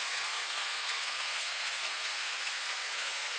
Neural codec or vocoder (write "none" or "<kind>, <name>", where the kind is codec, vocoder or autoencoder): codec, SNAC